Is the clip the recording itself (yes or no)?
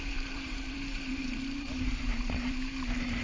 no